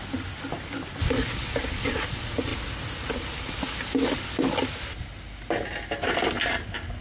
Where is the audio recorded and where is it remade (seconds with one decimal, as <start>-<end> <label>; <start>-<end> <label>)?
0.0-7.0 recorded